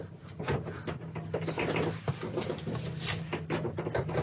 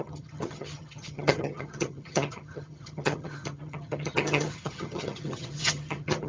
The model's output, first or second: second